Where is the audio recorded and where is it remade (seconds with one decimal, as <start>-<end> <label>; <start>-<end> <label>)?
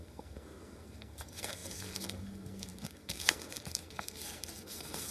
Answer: 0.0-5.1 remade